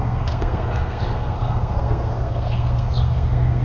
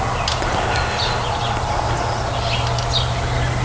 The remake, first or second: first